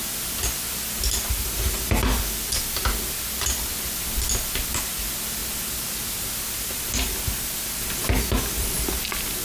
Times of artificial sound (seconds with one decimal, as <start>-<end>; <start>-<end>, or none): none